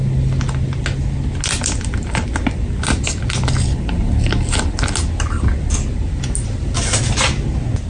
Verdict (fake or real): real